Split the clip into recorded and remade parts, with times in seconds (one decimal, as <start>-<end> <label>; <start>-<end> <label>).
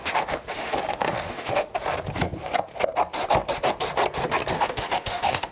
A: 0.0-1.7 remade; 1.7-4.6 recorded; 4.6-5.5 remade